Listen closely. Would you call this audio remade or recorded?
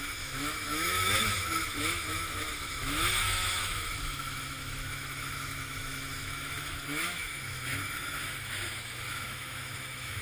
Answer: remade